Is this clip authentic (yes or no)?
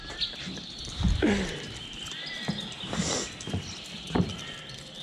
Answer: yes